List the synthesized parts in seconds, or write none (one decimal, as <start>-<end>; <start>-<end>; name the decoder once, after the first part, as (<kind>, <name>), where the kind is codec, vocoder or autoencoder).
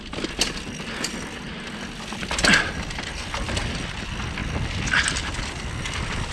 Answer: none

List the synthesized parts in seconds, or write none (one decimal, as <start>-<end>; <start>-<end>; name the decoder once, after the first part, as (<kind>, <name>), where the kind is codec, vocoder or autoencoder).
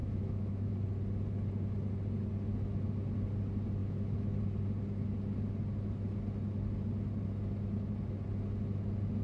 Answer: 0.0-0.7 (autoencoder, DAC-VAE); 3.8-4.4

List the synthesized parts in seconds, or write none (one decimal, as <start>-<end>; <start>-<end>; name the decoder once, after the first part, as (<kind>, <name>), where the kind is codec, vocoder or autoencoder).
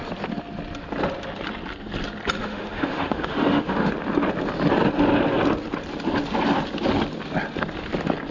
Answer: 2.4-3.9 (autoencoder, DAC-VAE)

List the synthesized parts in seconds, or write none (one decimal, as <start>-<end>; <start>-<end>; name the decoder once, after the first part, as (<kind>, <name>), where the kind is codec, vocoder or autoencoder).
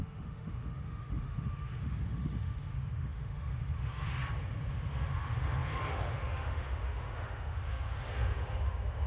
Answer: 0.0-4.2 (autoencoder, DAC-VAE); 4.7-9.1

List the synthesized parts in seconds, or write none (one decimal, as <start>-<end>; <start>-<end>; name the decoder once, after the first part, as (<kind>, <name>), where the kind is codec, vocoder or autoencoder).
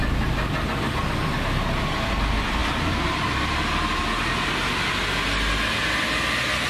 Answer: none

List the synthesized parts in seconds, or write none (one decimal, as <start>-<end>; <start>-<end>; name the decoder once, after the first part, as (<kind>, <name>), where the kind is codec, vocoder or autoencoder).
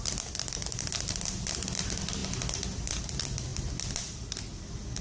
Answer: none